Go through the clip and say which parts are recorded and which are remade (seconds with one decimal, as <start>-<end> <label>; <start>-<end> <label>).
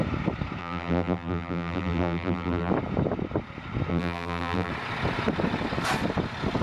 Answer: 0.0-0.6 recorded; 0.6-2.7 remade; 2.7-3.9 recorded; 3.9-4.7 remade; 4.7-6.6 recorded